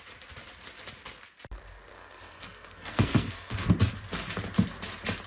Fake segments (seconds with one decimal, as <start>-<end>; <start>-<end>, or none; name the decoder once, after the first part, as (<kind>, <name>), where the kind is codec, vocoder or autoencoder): 1.9-3.7 (codec, SNAC)